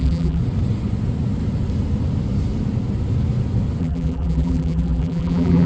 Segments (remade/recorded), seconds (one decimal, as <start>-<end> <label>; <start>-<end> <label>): 0.0-0.4 remade; 0.4-3.8 recorded; 3.8-5.7 remade